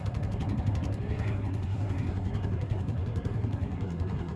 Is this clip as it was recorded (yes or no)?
no